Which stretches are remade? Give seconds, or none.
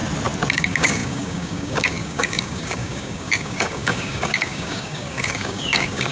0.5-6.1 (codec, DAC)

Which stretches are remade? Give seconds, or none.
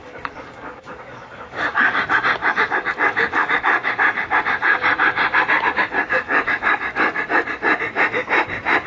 0.0-2.0 (codec, DAC); 2.4-3.9; 6.0-7.2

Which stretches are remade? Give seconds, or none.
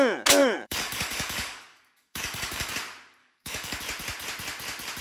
0.4-2.7 (codec, DAC); 3.2-3.8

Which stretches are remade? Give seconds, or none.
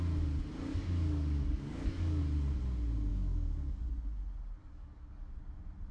0.7-2.2 (codec, DAC); 3.1-3.8; 4.6-5.3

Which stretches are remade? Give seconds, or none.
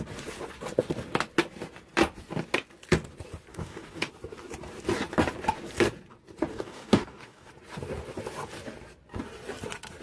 3.5-4.1 (codec, DAC); 6.5-7.5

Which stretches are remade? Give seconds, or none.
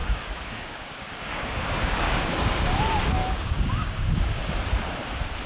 0.0-2.8 (codec, DAC); 3.2-4.5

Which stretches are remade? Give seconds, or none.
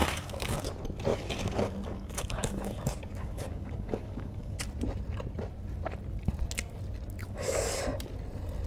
0.0-0.7 (codec, DAC); 1.1-4.6; 7.2-7.8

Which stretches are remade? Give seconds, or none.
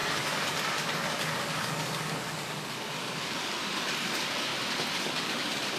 0.0-4.5 (codec, DAC); 5.0-5.8